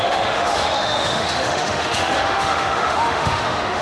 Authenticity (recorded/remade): remade